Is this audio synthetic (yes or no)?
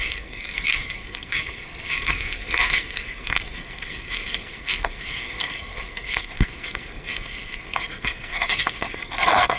yes